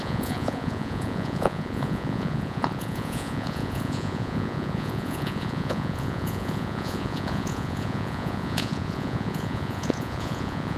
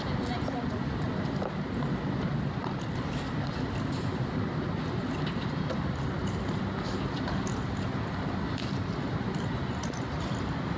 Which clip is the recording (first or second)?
second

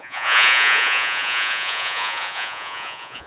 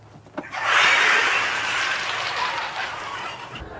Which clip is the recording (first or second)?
second